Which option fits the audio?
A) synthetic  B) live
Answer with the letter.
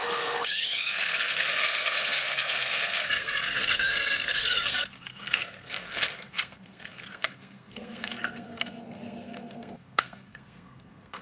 A